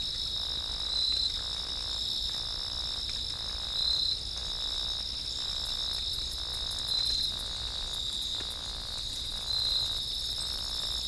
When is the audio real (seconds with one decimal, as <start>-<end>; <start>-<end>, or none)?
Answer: 0.0-11.1